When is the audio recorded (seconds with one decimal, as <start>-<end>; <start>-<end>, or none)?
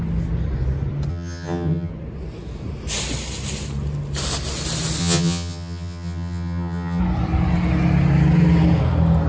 0.0-1.1; 1.9-5.0; 7.0-9.3